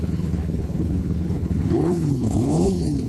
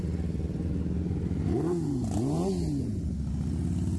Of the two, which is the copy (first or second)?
first